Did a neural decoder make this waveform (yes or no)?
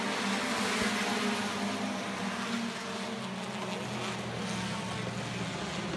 no